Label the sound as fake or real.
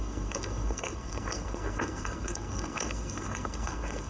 fake